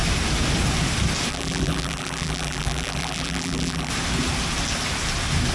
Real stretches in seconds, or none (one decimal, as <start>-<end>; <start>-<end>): 0.0-1.3; 3.9-5.5